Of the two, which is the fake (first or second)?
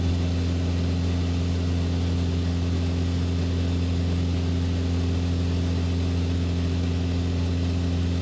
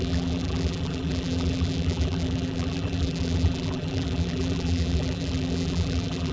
second